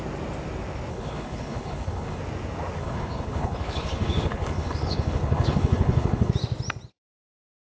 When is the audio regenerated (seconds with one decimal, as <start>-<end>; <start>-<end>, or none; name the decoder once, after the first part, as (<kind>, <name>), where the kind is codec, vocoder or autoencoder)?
0.9-2.2 (codec, HILCodec); 2.8-6.3

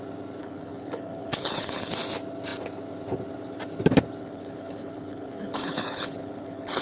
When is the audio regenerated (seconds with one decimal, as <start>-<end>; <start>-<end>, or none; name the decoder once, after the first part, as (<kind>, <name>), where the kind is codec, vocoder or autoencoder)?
0.4-1.9 (codec, HILCodec); 4.2-6.8

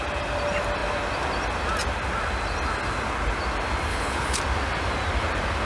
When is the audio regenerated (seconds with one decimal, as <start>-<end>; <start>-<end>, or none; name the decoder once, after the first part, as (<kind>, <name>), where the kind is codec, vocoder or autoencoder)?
3.9-4.4 (codec, HILCodec)

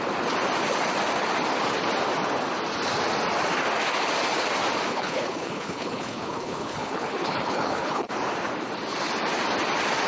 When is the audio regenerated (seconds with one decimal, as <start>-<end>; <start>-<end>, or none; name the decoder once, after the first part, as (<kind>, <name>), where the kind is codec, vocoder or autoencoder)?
4.9-8.1 (codec, HILCodec)

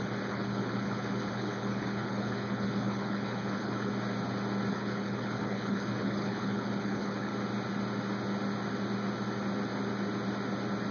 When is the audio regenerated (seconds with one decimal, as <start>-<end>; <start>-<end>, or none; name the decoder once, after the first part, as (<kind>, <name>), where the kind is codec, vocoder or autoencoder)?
0.0-3.9 (codec, HILCodec); 4.7-7.3